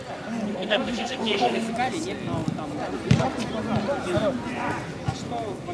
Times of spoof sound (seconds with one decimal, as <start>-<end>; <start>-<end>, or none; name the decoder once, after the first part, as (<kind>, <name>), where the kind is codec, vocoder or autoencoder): 0.5-1.7 (codec, SNAC)